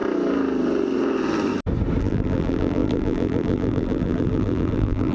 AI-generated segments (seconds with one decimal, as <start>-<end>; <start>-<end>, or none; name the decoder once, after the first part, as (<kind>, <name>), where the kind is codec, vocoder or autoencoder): 2.0-5.1 (vocoder, BigVGAN v2)